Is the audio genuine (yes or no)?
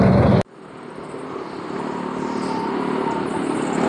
yes